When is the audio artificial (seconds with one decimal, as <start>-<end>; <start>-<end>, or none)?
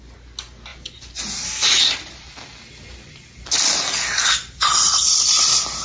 0.7-1.2